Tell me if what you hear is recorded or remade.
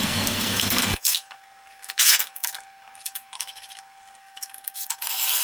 remade